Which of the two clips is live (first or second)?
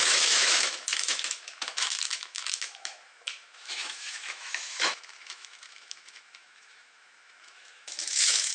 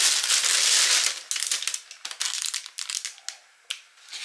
second